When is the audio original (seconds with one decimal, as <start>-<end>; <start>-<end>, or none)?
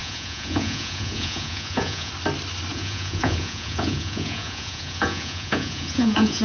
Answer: 2.1-2.7